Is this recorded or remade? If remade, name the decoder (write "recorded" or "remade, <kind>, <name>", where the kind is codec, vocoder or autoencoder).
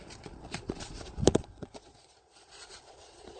remade, vocoder, Vocos